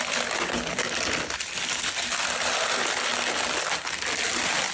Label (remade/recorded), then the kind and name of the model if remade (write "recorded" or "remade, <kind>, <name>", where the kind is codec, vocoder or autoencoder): recorded